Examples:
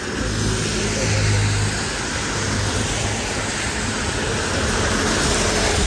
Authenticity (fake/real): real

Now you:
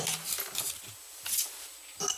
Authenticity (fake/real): real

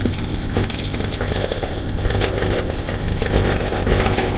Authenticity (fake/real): fake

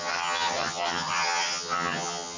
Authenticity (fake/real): fake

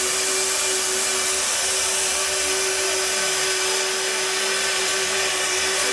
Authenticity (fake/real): real